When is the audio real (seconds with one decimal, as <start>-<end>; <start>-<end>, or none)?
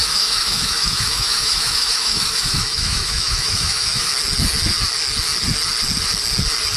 4.1-6.8